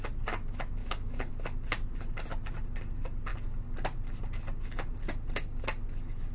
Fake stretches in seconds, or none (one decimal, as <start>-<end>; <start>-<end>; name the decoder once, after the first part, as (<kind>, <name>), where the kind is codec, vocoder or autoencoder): 0.8-1.3 (codec, DAC)